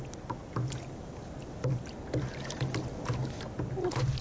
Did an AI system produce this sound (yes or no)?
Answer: no